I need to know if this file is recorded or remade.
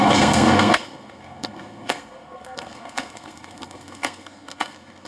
remade